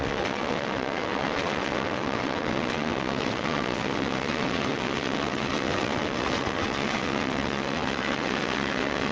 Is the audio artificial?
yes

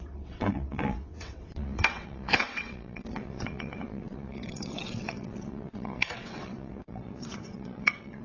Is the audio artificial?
yes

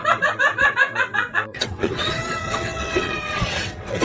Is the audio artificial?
yes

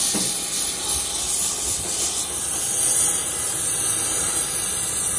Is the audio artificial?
no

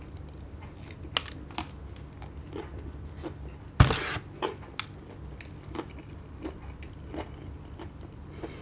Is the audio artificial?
no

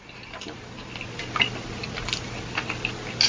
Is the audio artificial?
no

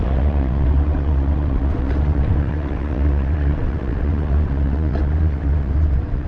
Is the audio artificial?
yes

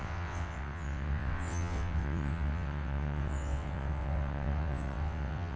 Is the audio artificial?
yes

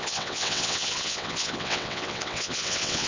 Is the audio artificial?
yes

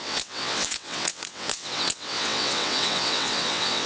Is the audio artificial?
yes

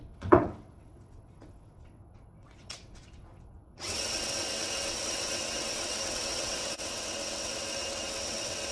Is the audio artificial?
yes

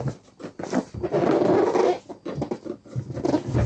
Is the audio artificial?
no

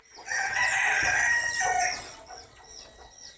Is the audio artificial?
yes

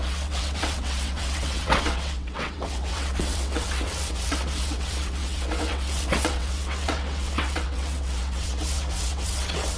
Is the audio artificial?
yes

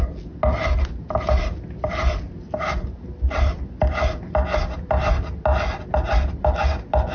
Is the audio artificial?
no